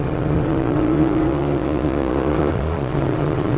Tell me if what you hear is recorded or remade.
remade